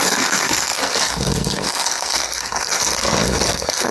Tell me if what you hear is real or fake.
fake